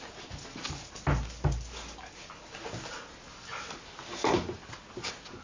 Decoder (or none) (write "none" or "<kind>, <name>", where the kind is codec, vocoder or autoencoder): none